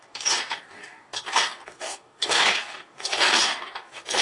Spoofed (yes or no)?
yes